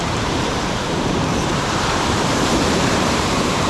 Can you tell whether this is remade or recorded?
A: remade